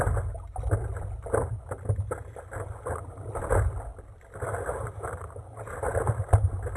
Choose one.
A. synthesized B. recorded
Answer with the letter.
B